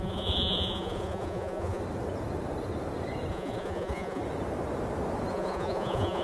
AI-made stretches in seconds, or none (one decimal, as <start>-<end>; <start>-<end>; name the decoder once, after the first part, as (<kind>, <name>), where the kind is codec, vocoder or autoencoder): 0.0-1.8 (vocoder, Vocos); 3.3-4.2; 5.3-6.2